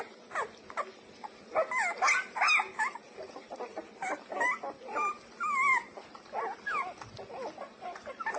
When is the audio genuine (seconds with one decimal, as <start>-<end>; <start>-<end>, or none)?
0.0-8.4

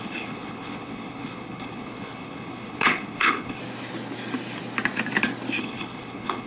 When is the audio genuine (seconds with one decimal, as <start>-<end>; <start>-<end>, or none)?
3.6-5.6

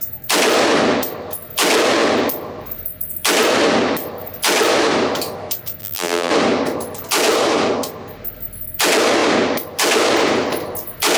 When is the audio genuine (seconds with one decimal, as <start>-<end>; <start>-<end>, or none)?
0.0-5.8; 6.3-11.2

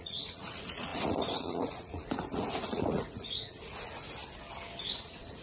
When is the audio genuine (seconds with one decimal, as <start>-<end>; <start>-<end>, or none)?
4.2-4.8

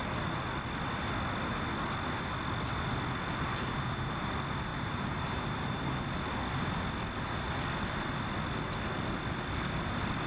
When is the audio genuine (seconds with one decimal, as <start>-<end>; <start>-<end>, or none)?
0.0-3.5; 4.3-4.7; 6.0-10.3

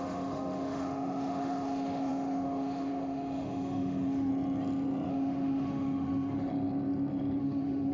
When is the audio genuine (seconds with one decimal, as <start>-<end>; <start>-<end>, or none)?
4.3-5.1; 6.5-7.4

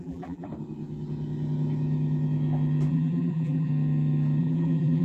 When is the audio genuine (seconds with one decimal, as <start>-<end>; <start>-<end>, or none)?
0.5-2.9; 3.7-4.4